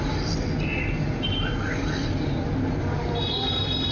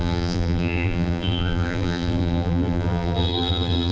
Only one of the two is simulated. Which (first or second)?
second